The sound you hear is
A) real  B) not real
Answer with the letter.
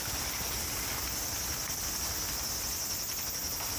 A